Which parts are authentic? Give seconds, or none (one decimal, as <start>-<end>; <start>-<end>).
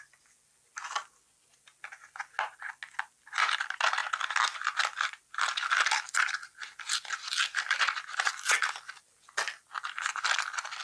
0.0-10.8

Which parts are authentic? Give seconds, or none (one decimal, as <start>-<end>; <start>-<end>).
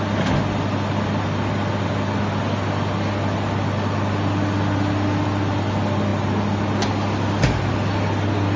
0.0-8.6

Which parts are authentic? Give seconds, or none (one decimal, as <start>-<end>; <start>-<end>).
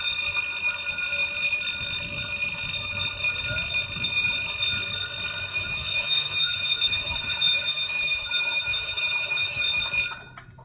0.0-5.5; 9.6-10.6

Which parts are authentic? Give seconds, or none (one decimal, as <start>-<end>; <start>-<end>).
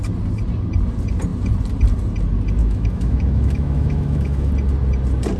0.0-2.6; 4.5-5.4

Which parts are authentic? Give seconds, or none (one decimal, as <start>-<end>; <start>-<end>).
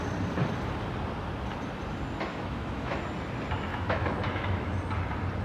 0.0-2.3; 3.0-3.7; 4.8-5.4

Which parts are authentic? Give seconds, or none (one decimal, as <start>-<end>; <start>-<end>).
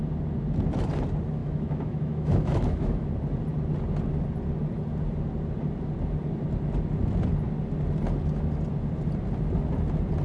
0.0-1.4; 3.1-10.2